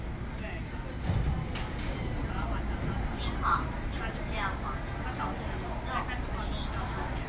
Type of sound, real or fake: real